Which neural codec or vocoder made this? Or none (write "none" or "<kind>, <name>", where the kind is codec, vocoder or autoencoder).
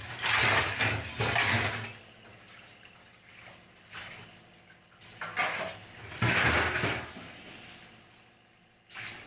none